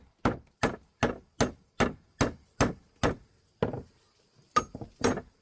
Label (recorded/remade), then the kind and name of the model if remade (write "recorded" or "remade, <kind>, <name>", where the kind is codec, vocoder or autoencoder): recorded